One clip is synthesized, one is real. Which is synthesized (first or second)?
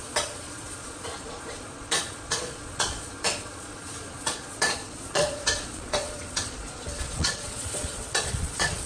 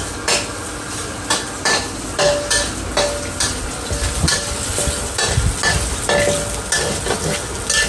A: first